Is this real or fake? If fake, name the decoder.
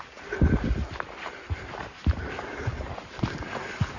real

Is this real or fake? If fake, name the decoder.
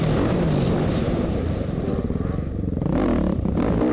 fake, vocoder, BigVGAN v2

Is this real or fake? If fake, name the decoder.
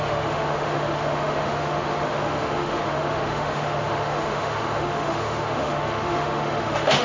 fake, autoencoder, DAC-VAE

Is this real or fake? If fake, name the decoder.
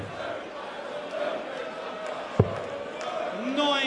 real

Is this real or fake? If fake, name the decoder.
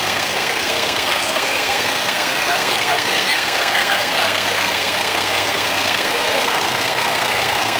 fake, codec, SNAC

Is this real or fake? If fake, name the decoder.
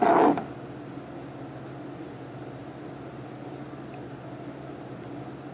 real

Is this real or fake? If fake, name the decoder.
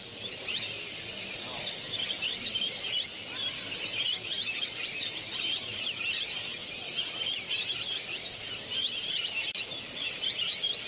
real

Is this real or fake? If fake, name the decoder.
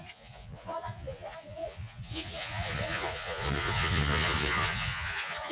fake, vocoder, Vocos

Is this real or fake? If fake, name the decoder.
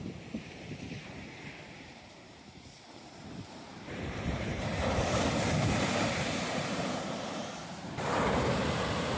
fake, vocoder, BigVGAN v2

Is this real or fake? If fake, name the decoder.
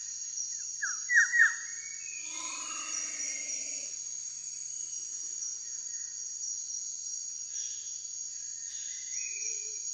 real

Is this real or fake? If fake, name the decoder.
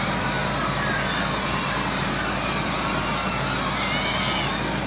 real